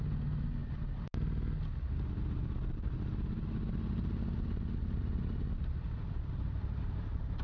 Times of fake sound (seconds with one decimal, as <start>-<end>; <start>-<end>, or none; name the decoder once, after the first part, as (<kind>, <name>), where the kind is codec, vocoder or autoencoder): none